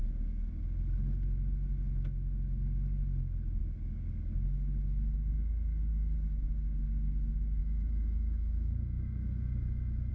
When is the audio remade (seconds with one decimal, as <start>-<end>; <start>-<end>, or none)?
7.6-10.1